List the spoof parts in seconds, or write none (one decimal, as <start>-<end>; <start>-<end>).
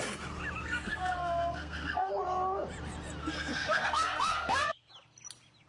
0.6-2.1; 3.2-4.9